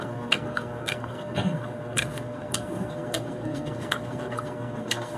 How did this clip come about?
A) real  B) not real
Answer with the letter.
B